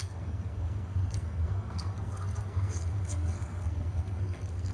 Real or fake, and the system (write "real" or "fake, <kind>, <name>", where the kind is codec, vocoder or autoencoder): fake, codec, SNAC